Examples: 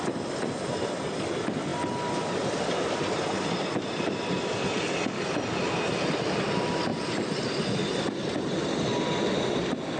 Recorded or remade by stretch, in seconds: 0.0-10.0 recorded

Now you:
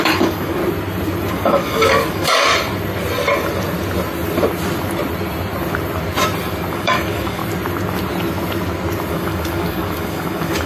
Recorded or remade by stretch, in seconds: 0.0-0.6 remade; 0.6-1.3 recorded; 1.3-2.5 remade; 2.5-6.7 recorded; 6.7-7.4 remade; 7.4-9.1 recorded; 9.1-10.7 remade

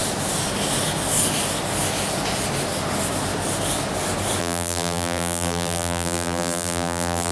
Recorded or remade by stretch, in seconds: 0.0-4.4 recorded; 4.4-7.3 remade

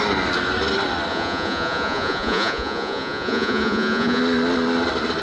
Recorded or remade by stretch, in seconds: 0.0-1.1 recorded; 1.1-4.2 remade; 4.2-5.2 recorded

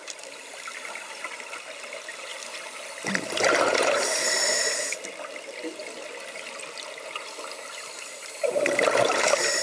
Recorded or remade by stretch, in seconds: 0.0-9.6 recorded